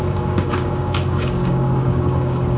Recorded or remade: remade